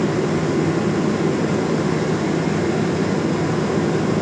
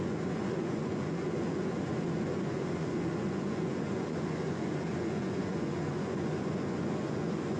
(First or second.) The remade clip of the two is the second